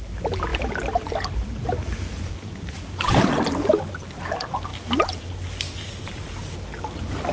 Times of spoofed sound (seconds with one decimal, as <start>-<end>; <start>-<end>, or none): 0.5-3.9